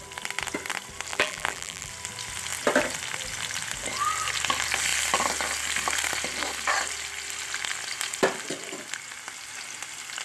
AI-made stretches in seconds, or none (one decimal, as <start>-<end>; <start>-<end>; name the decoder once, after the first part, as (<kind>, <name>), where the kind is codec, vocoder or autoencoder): 1.1-1.9 (vocoder, BigVGAN v2)